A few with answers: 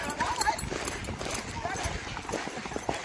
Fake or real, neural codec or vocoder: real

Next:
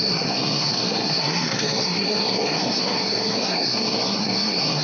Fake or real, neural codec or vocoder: fake, codec, SNAC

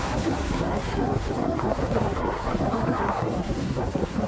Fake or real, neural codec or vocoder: fake, codec, SNAC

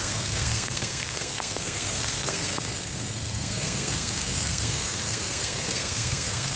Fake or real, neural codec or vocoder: fake, codec, SNAC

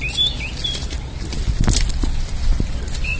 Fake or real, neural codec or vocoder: real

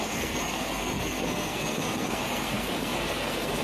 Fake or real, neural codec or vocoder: fake, codec, SNAC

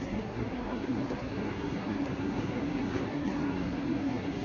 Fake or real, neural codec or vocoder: fake, codec, SNAC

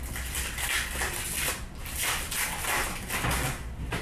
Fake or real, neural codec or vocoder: real